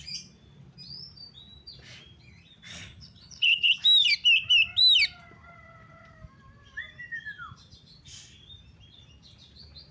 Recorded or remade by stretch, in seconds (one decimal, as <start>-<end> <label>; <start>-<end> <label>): 0.0-2.7 recorded; 2.7-3.7 remade; 3.7-9.9 recorded